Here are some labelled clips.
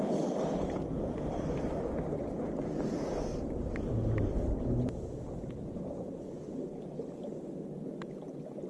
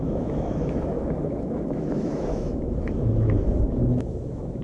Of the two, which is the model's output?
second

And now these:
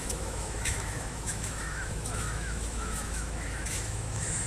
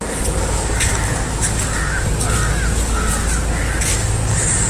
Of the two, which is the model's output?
first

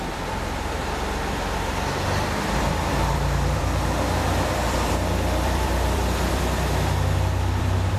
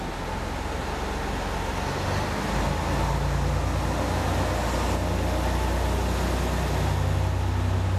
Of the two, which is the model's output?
first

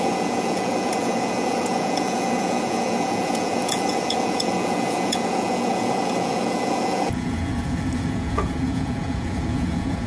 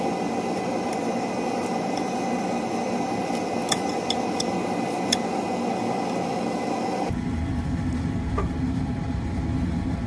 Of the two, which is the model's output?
first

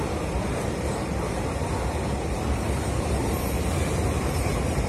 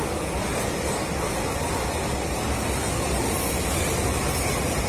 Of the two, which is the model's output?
first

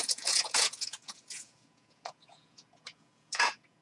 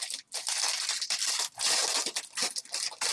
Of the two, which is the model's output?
first